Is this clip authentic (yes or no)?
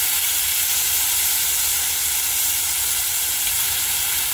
yes